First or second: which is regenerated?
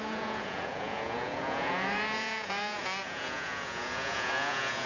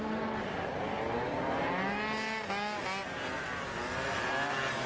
first